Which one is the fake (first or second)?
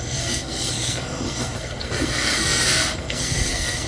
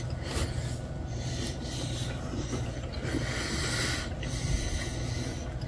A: first